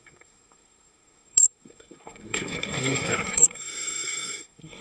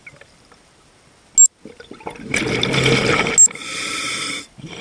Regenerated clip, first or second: first